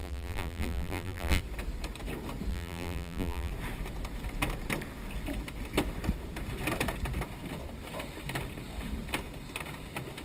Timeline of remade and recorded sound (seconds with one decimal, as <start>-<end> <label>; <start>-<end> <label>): 0.0-1.4 remade; 1.4-2.5 recorded; 2.5-3.5 remade; 3.5-10.2 recorded